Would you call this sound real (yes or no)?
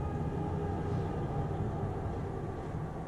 yes